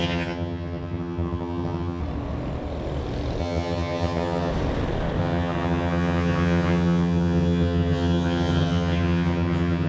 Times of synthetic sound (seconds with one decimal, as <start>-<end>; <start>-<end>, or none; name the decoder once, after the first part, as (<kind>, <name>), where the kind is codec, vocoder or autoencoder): 0.0-2.0 (vocoder, HiFi-GAN); 3.4-4.5; 5.2-9.9